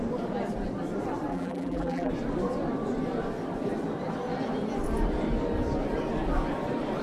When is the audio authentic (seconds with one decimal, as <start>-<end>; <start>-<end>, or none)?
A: 0.0-1.3; 2.1-7.0